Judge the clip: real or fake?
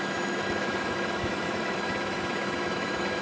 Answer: fake